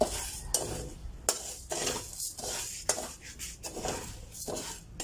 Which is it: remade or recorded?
recorded